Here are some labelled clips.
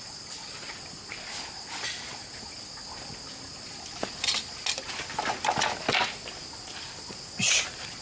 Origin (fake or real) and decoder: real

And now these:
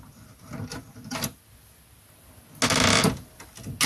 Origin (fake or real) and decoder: real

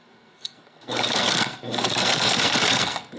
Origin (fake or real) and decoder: fake, codec, SNAC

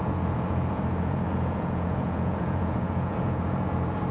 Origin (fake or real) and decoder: fake, vocoder, Vocos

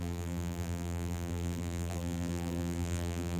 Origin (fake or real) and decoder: fake, vocoder, BigVGAN v2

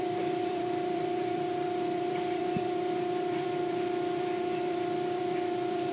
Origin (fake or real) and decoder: fake, vocoder, BigVGAN v2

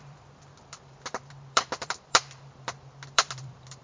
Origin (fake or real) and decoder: fake, vocoder, BigVGAN v2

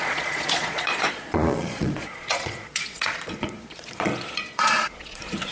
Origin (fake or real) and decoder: fake, vocoder, Vocos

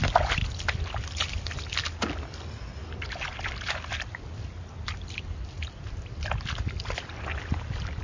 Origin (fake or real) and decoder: real